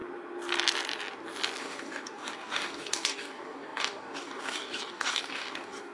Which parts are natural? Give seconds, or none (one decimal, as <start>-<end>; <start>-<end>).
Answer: 0.0-1.6